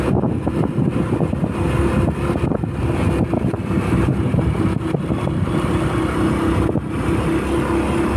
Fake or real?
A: real